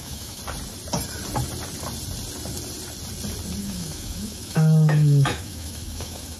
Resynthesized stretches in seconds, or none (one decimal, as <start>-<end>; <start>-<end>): 0.0-0.4; 3.6-6.4